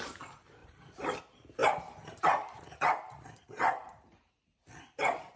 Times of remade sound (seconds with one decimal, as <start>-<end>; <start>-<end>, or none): 0.6-1.2; 1.6-4.3